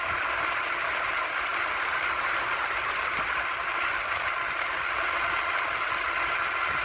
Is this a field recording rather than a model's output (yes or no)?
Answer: yes